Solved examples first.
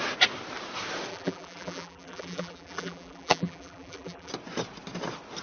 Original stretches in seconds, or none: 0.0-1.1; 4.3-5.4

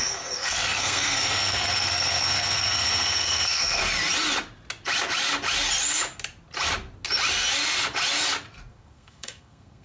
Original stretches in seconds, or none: 3.8-8.7

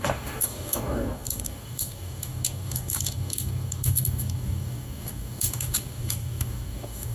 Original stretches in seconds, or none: none

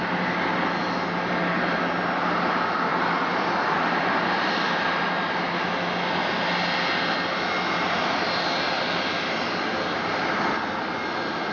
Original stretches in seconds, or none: 0.0-2.9; 4.5-11.5

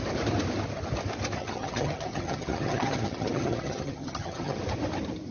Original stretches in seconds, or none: 0.0-1.4; 4.6-5.3